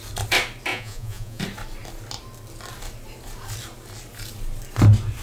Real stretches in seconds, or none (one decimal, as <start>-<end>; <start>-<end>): 0.0-0.7; 1.4-5.2